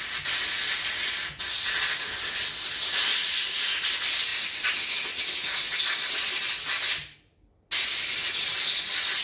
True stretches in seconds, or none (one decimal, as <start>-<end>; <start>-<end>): 0.0-3.1; 3.7-9.2